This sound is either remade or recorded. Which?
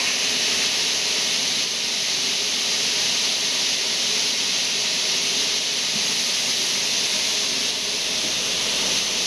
recorded